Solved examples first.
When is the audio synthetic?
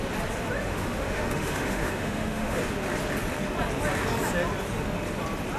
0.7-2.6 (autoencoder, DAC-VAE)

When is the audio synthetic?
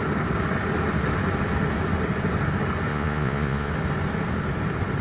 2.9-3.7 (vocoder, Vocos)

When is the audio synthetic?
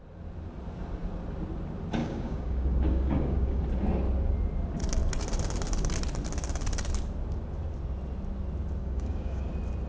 2.0-3.6 (codec, DAC); 8.8-9.5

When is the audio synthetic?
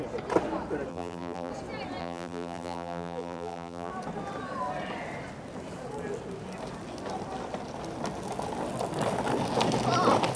0.9-1.5 (vocoder, BigVGAN v2); 2.0-3.9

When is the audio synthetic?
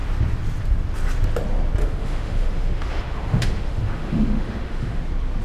1.8-5.0 (autoencoder, DAC-VAE)